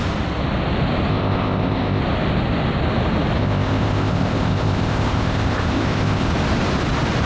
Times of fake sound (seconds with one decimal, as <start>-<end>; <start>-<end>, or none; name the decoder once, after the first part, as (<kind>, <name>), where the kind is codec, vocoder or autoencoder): 1.1-2.0 (codec, ZipCodec); 3.4-6.3